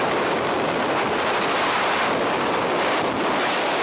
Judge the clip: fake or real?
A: real